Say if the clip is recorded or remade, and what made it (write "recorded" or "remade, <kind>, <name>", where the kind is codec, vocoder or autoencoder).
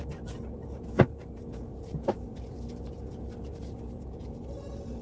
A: remade, vocoder, BigVGAN v2